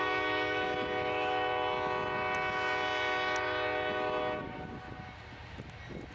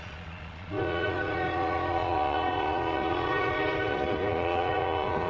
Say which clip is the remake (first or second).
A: second